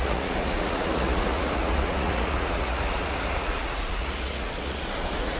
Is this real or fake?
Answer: fake